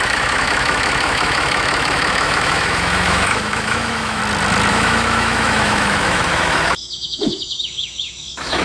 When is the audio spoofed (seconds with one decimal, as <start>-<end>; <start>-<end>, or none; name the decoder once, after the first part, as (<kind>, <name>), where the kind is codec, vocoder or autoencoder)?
0.0-4.2 (autoencoder, DAC-VAE); 4.7-8.6